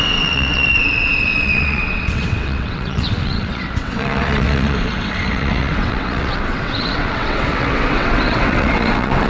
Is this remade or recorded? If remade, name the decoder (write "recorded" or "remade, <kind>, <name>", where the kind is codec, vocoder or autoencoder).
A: remade, vocoder, WaveNeXt